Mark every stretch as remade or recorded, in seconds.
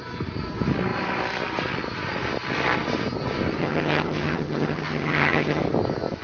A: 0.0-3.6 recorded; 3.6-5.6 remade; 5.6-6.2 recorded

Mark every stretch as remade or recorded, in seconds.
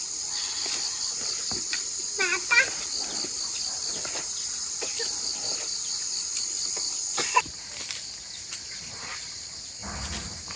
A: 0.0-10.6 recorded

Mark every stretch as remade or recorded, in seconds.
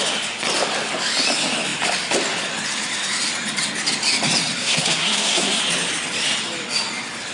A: 0.0-4.6 recorded; 4.6-5.6 remade; 5.6-7.3 recorded